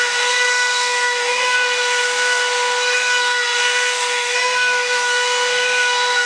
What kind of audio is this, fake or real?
fake